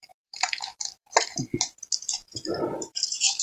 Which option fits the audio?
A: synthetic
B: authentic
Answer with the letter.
A